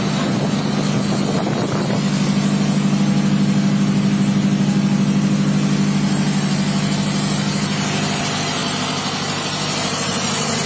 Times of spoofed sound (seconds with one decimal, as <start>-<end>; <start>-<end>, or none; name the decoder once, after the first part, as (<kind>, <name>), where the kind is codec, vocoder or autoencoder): none